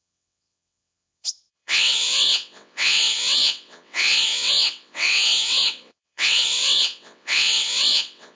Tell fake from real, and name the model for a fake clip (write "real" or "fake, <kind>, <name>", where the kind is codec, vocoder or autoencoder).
fake, vocoder, WaveNeXt